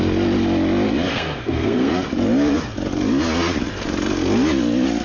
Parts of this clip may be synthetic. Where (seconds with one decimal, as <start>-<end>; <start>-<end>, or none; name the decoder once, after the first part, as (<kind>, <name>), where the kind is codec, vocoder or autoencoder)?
1.1-1.9 (codec, SNAC)